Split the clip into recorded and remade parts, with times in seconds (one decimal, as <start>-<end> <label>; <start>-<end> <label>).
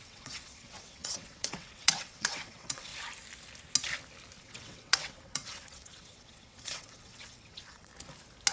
0.0-2.9 remade; 2.9-4.4 recorded; 4.4-7.9 remade; 7.9-8.5 recorded